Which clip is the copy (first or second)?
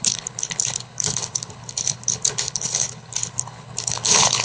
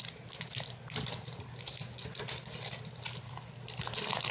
first